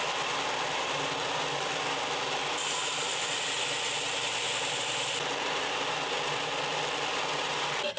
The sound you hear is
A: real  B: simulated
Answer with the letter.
A